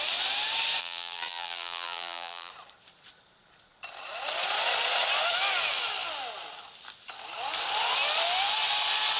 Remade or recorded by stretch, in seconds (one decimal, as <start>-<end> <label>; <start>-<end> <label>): 0.0-0.8 recorded; 0.8-2.5 remade; 2.5-9.2 recorded